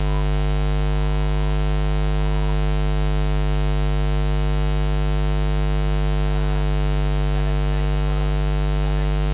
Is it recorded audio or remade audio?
recorded